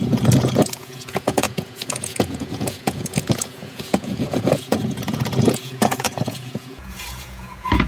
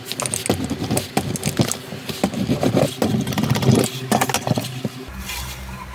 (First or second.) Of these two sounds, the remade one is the first